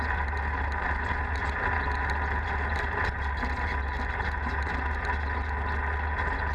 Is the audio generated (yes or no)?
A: no